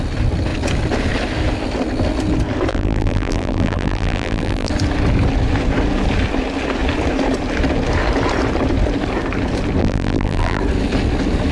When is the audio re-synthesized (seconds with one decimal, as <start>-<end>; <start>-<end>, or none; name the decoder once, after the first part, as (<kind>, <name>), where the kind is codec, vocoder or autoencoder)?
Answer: 2.7-4.7 (vocoder, BigVGAN v2); 9.8-10.6